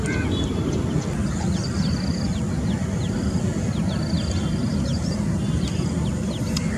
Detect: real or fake real